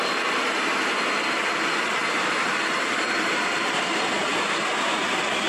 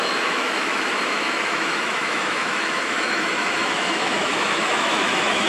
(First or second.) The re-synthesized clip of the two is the second